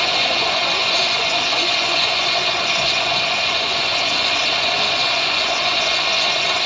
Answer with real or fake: fake